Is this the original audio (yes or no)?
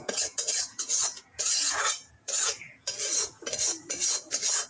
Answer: no